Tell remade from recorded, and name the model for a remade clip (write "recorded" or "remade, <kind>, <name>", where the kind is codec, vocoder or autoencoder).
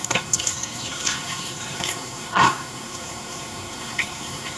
remade, codec, SNAC